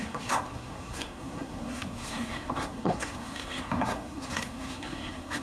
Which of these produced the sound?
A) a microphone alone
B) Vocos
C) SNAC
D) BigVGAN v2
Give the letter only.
C